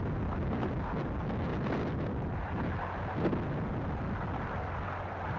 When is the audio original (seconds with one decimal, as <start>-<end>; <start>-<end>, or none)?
0.0-5.4